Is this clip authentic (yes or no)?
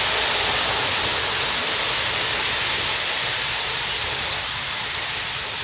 yes